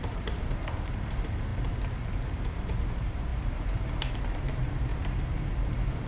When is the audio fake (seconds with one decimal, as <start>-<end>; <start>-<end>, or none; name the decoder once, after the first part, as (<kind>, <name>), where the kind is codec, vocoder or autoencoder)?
0.0-6.1 (vocoder, BigVGAN v2)